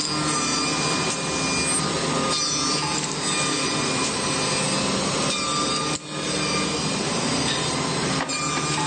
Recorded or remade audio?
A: recorded